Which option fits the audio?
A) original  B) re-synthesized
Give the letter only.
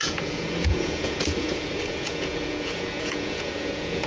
B